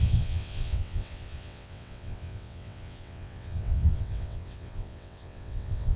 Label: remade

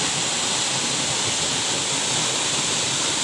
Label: recorded